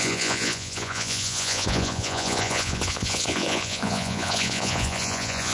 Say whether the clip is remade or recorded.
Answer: remade